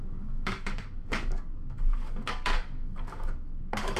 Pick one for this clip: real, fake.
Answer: fake